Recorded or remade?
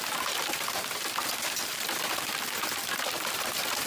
recorded